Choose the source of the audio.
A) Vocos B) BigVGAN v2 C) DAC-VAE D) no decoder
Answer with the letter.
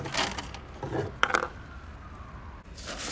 D